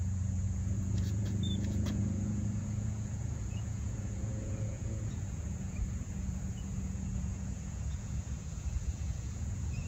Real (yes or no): no